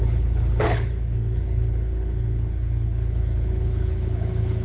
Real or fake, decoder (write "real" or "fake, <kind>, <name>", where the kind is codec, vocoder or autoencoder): fake, codec, HILCodec